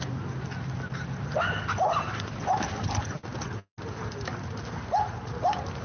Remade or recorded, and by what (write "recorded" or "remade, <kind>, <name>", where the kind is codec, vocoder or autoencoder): recorded